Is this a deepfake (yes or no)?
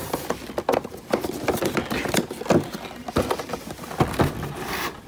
no